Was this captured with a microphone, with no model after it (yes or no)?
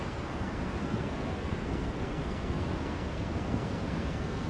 no